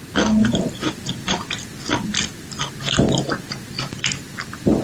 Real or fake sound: real